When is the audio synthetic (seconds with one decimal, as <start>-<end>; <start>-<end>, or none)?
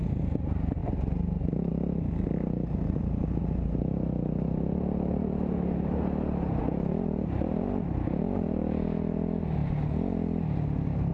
none